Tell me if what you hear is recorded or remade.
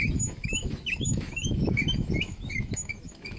remade